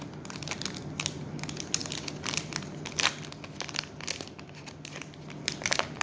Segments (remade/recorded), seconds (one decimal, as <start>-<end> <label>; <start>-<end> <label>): 0.0-6.0 recorded